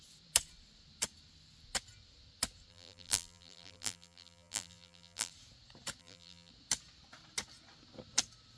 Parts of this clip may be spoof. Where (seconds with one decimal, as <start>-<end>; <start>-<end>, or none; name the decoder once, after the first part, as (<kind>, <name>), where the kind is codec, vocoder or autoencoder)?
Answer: 2.7-5.3 (vocoder, BigVGAN v2); 6.0-6.5